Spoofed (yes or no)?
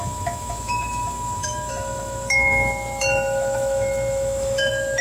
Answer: yes